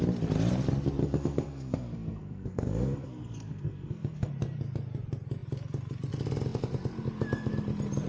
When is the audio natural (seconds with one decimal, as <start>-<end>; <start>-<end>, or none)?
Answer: 0.0-1.0; 4.3-8.1